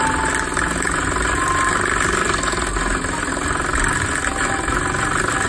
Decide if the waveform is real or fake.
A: real